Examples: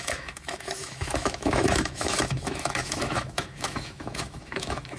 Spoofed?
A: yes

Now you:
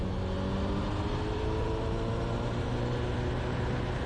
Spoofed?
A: no